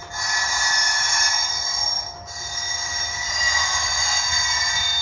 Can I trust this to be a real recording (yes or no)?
yes